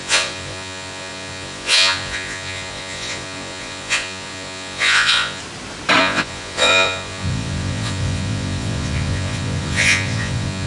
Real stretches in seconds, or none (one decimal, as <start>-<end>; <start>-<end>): 5.4-6.0